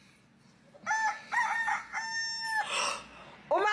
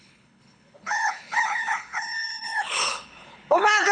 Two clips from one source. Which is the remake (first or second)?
second